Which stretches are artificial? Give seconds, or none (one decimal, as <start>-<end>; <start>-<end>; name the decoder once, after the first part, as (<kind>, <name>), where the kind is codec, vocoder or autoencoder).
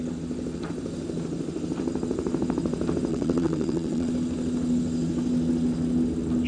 3.1-4.1 (vocoder, WaveNeXt)